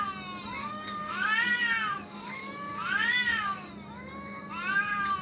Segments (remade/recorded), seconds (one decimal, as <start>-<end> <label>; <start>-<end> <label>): 0.0-0.6 recorded; 0.6-3.7 remade; 3.7-5.2 recorded